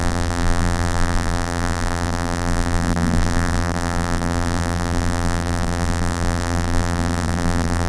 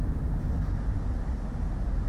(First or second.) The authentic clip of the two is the second